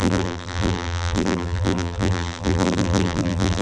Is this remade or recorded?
remade